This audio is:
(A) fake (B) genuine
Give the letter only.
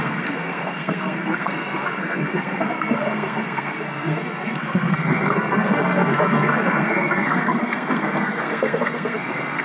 A